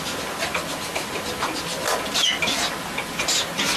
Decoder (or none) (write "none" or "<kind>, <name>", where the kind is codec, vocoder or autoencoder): none